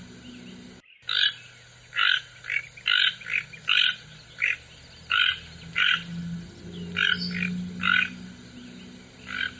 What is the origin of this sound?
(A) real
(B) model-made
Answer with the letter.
A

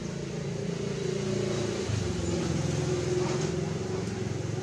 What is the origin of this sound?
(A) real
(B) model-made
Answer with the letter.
A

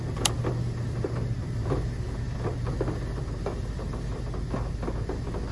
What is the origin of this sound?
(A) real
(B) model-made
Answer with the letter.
A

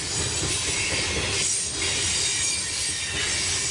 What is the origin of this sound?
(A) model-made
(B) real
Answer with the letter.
B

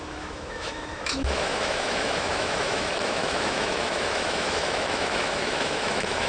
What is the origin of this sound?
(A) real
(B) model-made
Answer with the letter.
B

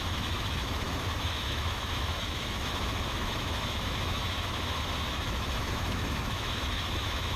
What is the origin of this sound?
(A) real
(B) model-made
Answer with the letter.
B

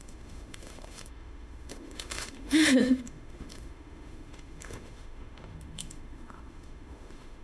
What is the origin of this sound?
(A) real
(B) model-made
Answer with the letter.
B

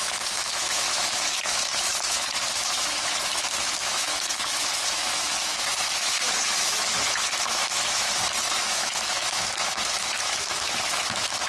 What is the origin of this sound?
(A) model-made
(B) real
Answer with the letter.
A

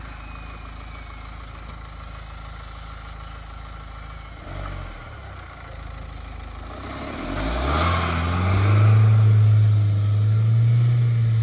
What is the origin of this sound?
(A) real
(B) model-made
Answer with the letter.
A